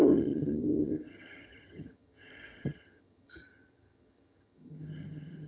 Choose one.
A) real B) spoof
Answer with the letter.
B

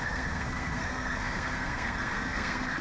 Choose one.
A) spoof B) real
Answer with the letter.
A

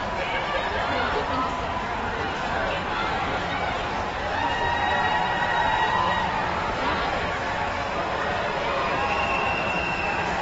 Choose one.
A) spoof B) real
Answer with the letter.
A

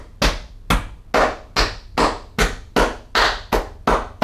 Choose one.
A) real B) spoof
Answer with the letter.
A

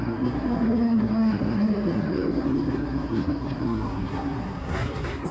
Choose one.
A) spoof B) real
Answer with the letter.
A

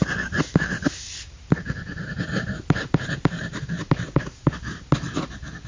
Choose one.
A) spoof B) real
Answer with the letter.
B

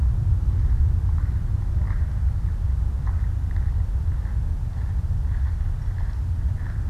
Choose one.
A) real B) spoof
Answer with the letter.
A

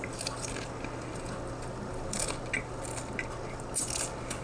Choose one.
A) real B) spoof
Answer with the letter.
A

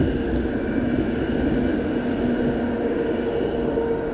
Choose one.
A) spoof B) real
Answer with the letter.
B